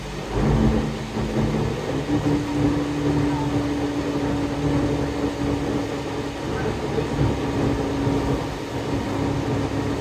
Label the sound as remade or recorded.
recorded